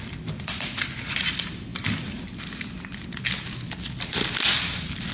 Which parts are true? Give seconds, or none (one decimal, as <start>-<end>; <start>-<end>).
0.0-5.1